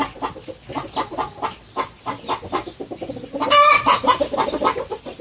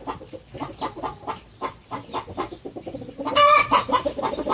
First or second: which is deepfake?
second